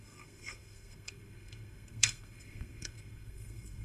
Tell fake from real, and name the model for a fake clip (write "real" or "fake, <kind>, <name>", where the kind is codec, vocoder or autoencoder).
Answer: fake, codec, SNAC